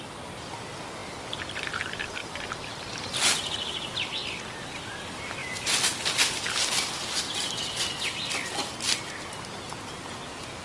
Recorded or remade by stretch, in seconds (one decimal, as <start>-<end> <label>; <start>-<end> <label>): 0.0-2.2 recorded; 2.2-3.0 remade; 3.0-5.4 recorded; 5.4-6.4 remade; 6.4-10.6 recorded